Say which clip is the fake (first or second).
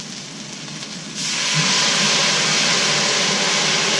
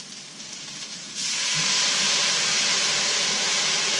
second